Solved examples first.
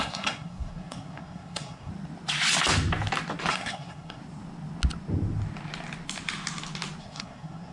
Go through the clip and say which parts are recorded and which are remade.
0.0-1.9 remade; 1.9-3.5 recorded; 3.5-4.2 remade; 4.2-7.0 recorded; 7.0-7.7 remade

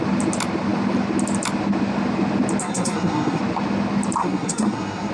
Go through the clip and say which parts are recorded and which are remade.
0.0-2.6 recorded; 2.6-3.4 remade; 3.4-4.2 recorded; 4.2-5.1 remade

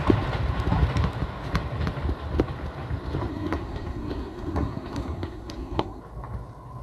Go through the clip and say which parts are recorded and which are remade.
0.0-3.3 recorded; 3.3-6.0 remade; 6.0-6.8 recorded

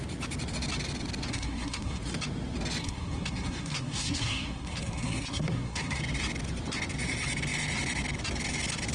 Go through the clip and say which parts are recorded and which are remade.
0.0-1.3 recorded; 1.3-2.0 remade; 2.0-2.8 recorded; 2.8-6.0 remade; 6.0-8.9 recorded

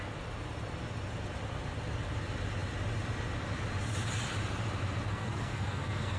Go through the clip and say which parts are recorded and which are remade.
0.0-5.1 recorded; 5.1-6.2 remade

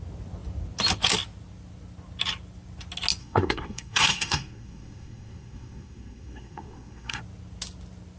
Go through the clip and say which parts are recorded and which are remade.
0.0-3.2 recorded; 3.2-7.2 remade; 7.2-8.2 recorded

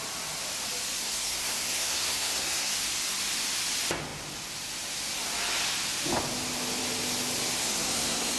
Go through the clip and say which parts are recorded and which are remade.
0.0-1.0 recorded; 1.0-2.7 remade; 2.7-7.6 recorded; 7.6-8.4 remade

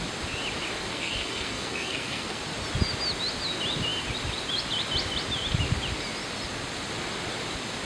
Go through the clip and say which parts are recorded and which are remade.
0.0-0.9 recorded; 0.9-2.4 remade; 2.4-7.8 recorded